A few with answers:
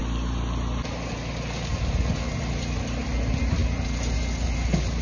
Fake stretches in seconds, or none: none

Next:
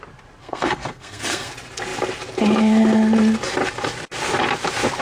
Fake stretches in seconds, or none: 0.4-1.5 (codec, SNAC)

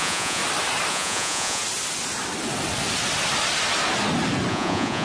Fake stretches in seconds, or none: 0.0-0.4 (vocoder, Vocos); 0.9-1.6; 4.5-5.0

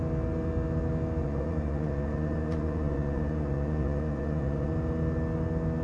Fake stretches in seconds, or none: 1.2-4.7 (vocoder, Vocos)

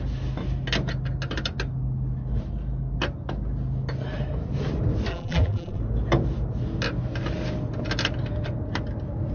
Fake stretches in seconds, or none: 5.1-5.8 (vocoder, BigVGAN v2)